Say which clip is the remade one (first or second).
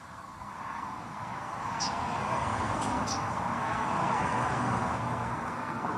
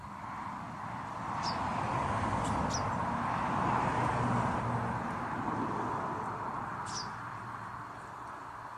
first